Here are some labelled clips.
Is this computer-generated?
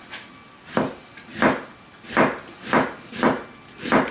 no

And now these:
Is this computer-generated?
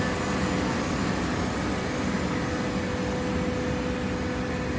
no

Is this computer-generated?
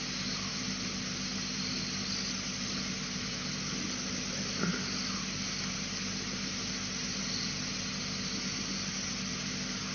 no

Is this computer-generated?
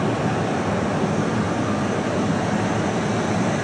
no